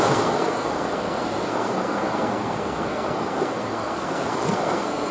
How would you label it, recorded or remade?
remade